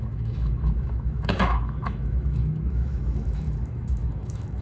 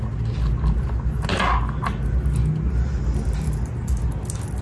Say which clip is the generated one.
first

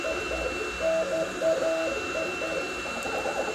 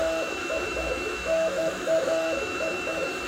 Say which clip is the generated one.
second